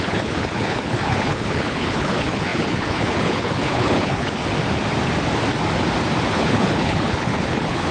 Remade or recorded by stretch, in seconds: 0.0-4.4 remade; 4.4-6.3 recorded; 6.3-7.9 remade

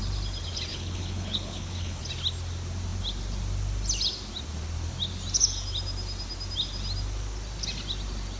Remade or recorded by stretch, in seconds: 0.0-0.7 recorded; 0.7-2.0 remade; 2.0-8.4 recorded

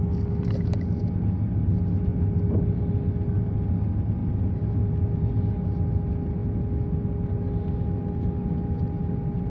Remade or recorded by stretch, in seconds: 0.0-9.5 recorded

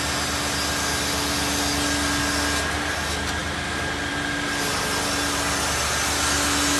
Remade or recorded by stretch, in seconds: 0.0-6.8 recorded

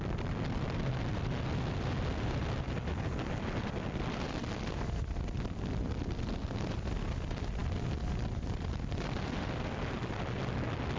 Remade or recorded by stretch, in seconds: 0.0-11.0 recorded

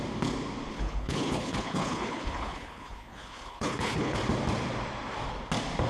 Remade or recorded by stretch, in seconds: 0.0-0.7 recorded; 0.7-4.2 remade; 4.2-5.9 recorded